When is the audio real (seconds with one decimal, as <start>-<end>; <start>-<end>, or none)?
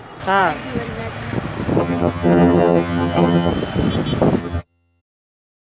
0.0-1.8; 3.5-4.4; 5.0-5.6